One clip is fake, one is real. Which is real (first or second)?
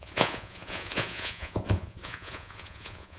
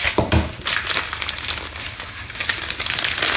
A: second